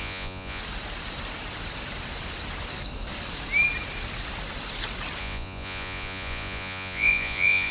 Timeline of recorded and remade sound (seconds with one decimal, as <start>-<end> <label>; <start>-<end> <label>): 0.0-0.6 remade; 0.6-5.2 recorded; 5.2-7.7 remade